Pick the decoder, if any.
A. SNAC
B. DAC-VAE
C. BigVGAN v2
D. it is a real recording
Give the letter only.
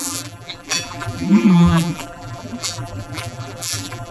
C